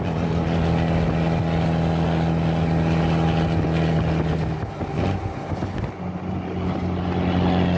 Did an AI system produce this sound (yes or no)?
no